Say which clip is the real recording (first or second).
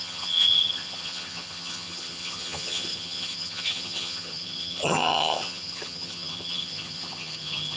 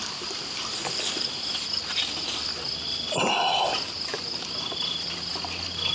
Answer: second